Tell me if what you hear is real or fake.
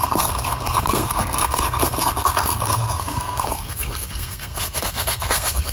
fake